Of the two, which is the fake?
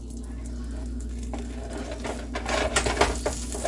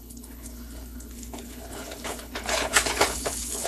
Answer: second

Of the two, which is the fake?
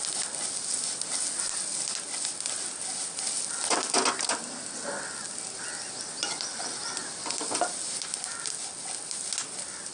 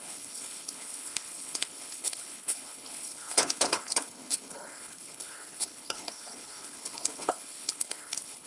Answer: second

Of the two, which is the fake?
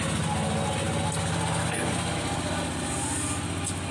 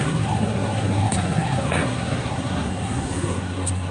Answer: second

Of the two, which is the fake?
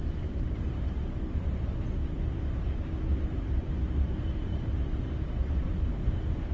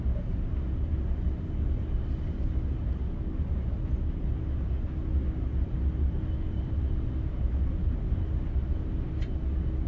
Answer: first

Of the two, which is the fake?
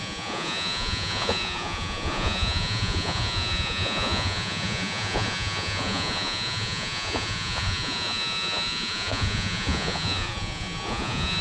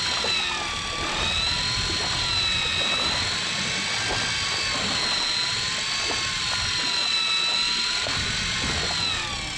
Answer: first